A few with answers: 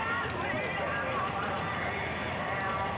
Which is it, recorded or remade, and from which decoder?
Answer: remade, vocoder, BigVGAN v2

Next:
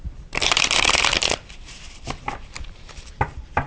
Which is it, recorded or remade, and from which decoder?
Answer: remade, vocoder, BigVGAN v2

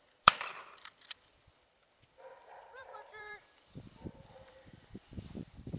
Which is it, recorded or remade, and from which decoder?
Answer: remade, vocoder, BigVGAN v2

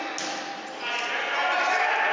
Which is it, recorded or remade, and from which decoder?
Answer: recorded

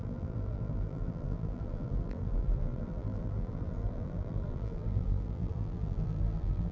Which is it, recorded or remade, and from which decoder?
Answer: remade, vocoder, BigVGAN v2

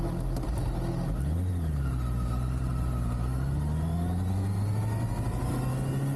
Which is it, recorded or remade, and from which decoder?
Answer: recorded